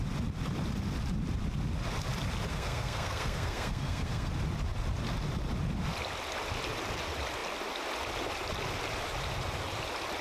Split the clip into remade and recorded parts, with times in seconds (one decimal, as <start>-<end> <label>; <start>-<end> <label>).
0.0-2.5 recorded; 2.5-4.3 remade; 4.3-10.2 recorded